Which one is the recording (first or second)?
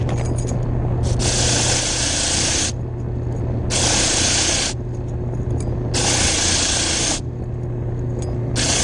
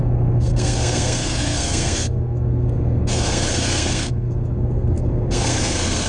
first